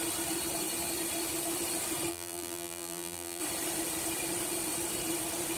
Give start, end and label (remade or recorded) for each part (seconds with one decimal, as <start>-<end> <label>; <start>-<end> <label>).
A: 0.0-2.1 recorded; 2.1-3.4 remade; 3.4-5.6 recorded